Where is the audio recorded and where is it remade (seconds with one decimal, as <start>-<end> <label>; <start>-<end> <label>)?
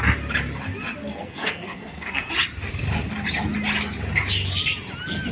0.0-1.0 recorded; 1.0-2.3 remade; 2.3-5.3 recorded